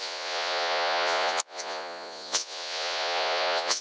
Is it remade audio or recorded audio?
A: remade